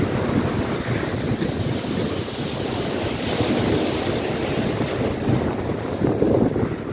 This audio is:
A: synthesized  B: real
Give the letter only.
B